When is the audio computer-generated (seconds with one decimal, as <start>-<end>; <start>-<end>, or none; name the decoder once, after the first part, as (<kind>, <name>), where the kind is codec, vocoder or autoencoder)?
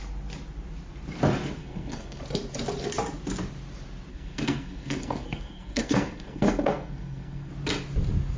1.6-2.2 (codec, SNAC); 4.1-7.5